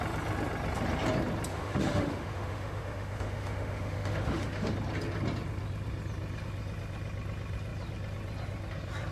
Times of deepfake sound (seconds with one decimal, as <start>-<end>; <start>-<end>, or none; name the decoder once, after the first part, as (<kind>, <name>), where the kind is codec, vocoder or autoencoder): 1.5-4.7 (autoencoder, DAC-VAE)